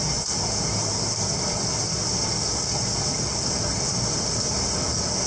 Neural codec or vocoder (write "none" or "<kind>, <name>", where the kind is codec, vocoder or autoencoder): none